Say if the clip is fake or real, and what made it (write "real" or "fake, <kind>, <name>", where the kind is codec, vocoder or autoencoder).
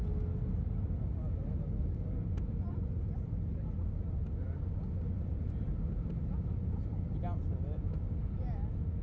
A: real